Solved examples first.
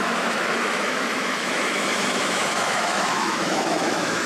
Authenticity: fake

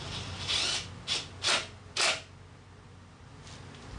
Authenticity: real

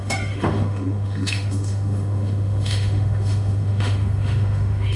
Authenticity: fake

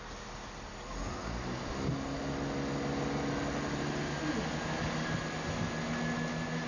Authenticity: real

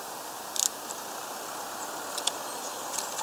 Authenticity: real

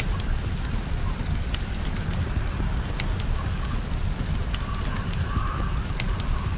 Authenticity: real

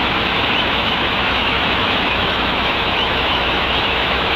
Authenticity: fake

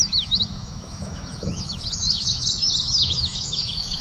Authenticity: fake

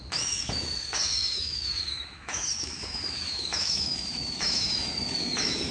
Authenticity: fake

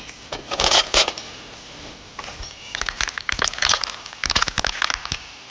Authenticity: real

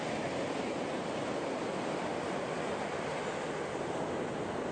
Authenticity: real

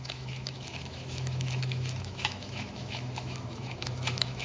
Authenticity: fake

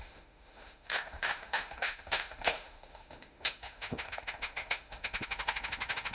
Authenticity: fake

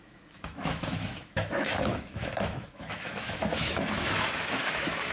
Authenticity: fake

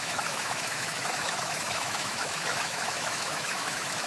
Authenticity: fake